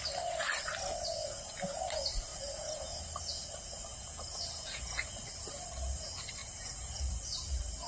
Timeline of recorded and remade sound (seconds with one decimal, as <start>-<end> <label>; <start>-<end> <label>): 0.0-1.2 recorded; 1.2-1.8 remade; 1.8-2.3 recorded; 2.3-3.0 remade; 3.0-3.9 recorded; 3.9-5.2 remade; 5.2-6.4 recorded; 6.4-7.0 remade; 7.0-7.9 recorded

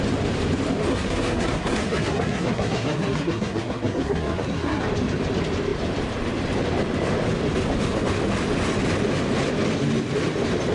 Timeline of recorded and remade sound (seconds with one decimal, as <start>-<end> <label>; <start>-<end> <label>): 0.0-0.9 recorded; 0.9-4.8 remade; 4.8-10.7 recorded

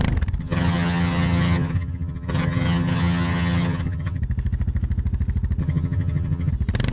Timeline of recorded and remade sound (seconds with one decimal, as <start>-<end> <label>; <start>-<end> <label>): 0.0-0.4 recorded; 0.4-4.2 remade; 4.2-5.6 recorded; 5.6-6.5 remade; 6.5-6.9 recorded

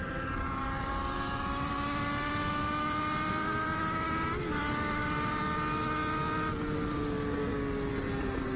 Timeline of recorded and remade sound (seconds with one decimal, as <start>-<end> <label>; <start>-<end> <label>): 0.0-5.4 remade; 5.4-8.2 recorded; 8.2-8.6 remade

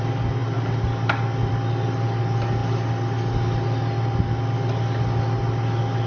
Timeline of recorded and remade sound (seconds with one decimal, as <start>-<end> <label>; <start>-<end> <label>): 0.0-6.1 recorded

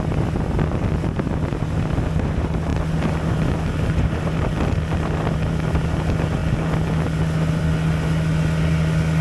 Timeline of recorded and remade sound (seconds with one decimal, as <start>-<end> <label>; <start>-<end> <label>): 0.0-9.2 recorded